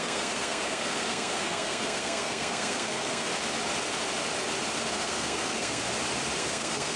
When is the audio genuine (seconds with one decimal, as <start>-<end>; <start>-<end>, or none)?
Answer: 3.3-4.9; 5.8-6.4